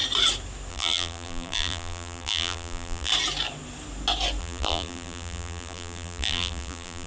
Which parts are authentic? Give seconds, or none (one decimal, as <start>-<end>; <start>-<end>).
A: 0.0-0.7; 3.1-4.4